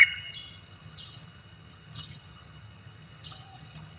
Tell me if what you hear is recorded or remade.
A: remade